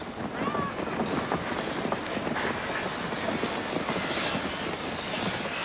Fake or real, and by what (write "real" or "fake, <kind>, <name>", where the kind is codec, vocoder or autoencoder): real